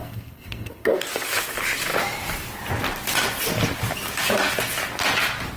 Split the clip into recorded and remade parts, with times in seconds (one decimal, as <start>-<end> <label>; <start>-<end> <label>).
0.0-1.0 remade; 1.0-5.6 recorded